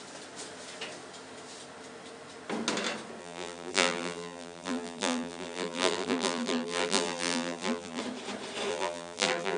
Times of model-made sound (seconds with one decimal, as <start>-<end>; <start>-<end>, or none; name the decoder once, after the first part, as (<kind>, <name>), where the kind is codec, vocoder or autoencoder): 3.2-8.0 (vocoder, BigVGAN v2); 8.7-9.6